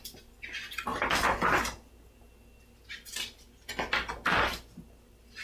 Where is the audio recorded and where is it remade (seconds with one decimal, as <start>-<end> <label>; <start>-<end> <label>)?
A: 0.0-5.4 recorded